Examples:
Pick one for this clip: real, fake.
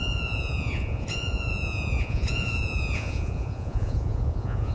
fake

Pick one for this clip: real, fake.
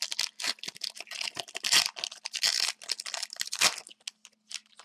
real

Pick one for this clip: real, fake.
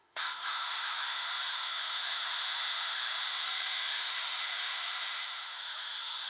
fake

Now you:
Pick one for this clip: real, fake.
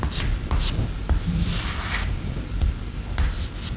real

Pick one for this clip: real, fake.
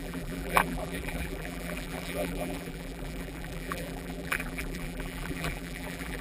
fake